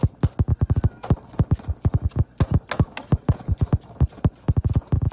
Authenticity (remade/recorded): recorded